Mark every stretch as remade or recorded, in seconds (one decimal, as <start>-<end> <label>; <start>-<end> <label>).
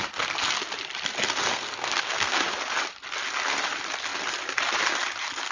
0.0-1.5 recorded; 1.5-2.4 remade; 2.4-5.5 recorded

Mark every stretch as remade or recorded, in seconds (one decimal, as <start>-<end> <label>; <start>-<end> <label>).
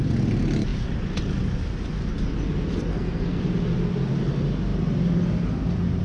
0.0-2.9 recorded; 2.9-3.4 remade; 3.4-6.0 recorded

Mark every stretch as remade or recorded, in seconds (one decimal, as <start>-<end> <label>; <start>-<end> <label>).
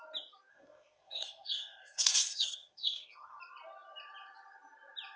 0.0-0.5 recorded; 0.5-3.4 remade; 3.4-5.2 recorded